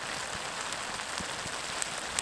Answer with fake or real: real